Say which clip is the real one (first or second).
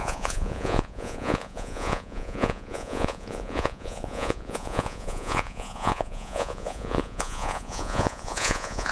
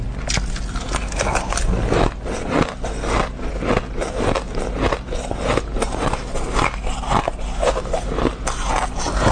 second